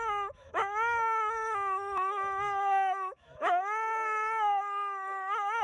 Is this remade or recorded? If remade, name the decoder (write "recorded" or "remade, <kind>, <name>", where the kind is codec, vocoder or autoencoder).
remade, autoencoder, DAC-VAE